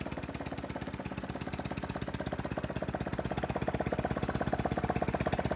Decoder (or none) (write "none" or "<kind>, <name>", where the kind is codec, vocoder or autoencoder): none